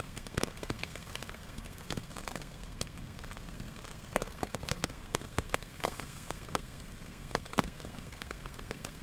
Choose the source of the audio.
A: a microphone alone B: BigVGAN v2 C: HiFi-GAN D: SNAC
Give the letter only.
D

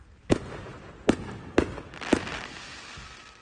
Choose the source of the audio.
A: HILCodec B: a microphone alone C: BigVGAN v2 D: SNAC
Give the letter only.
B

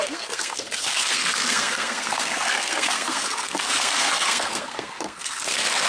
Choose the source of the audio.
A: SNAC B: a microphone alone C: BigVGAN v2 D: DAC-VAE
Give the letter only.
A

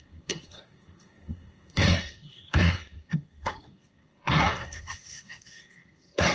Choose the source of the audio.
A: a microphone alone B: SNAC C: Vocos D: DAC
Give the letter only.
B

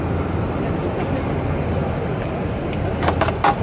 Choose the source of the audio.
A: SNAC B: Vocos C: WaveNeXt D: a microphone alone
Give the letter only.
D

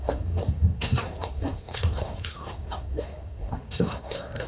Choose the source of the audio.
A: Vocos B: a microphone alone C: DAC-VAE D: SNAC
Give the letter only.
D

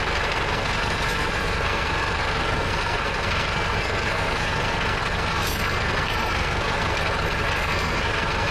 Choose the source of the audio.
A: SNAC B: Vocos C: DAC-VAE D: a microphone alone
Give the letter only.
A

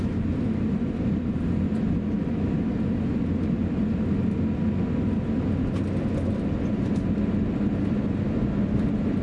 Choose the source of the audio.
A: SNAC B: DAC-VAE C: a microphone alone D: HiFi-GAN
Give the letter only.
C